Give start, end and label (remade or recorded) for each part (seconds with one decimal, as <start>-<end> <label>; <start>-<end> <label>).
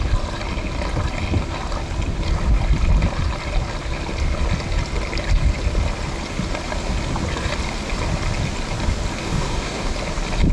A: 0.0-9.2 recorded; 9.2-9.9 remade; 9.9-10.5 recorded